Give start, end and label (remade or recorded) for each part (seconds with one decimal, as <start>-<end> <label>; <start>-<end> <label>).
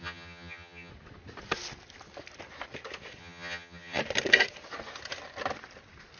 0.0-0.9 remade; 0.9-3.2 recorded; 3.2-4.0 remade; 4.0-6.2 recorded